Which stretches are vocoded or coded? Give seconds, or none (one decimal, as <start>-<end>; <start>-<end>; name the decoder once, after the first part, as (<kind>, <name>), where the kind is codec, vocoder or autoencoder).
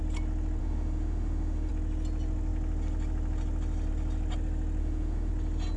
0.6-1.7 (autoencoder, DAC-VAE); 4.8-5.3